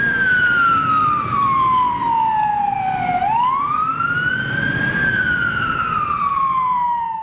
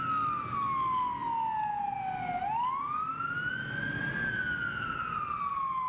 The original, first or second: second